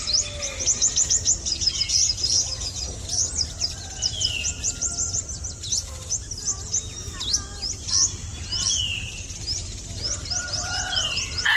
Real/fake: real